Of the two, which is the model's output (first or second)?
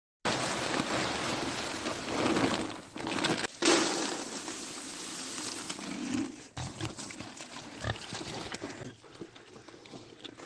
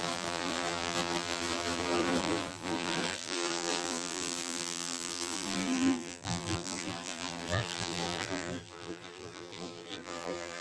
second